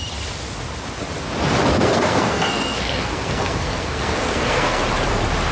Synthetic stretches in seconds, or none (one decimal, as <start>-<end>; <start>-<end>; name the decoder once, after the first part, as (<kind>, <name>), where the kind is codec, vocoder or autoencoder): 1.7-4.8 (codec, SNAC)